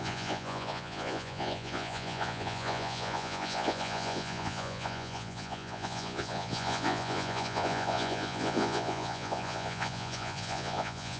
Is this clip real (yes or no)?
no